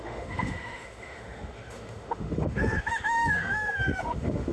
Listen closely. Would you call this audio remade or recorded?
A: remade